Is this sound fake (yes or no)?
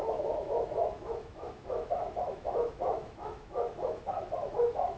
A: yes